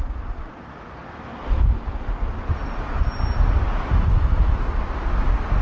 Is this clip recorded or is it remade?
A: recorded